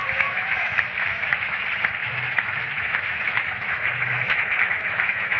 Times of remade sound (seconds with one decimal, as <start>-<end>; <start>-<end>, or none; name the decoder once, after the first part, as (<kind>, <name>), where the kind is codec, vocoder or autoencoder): 0.0-1.6 (autoencoder, DAC-VAE); 2.0-5.4